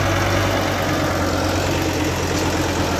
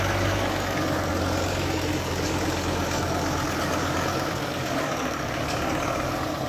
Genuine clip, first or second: first